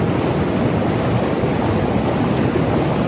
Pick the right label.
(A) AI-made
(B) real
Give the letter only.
B